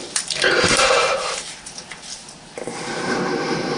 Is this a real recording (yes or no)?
no